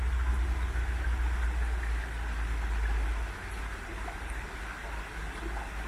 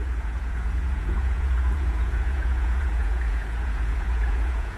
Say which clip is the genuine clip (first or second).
first